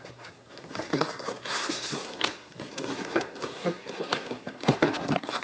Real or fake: fake